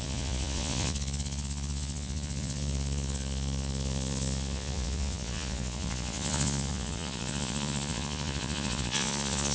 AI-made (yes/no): yes